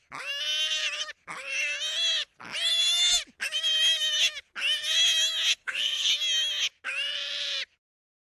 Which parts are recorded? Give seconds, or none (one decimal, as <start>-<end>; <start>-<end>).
0.0-5.5; 6.1-8.3